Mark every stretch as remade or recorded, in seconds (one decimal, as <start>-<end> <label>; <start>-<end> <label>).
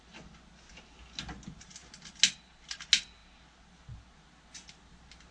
0.0-5.3 recorded